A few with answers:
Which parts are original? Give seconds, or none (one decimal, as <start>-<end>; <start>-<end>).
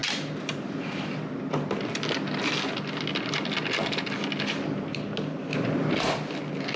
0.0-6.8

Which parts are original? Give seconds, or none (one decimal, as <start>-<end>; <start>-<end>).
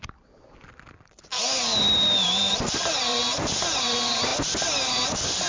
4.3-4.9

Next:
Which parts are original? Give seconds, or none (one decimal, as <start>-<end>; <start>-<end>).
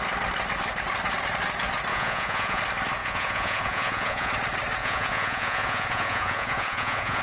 0.0-1.9; 2.6-3.0; 4.3-4.8